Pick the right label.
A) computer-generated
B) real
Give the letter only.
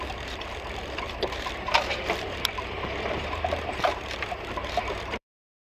A